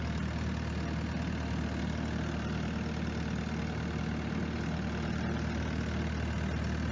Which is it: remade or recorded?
recorded